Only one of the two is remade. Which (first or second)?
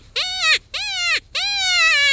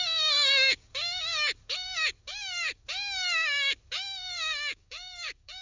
second